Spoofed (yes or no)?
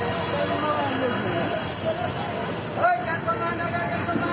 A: no